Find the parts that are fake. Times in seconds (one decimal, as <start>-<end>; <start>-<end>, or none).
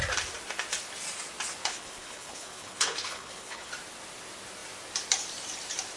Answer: 1.6-3.7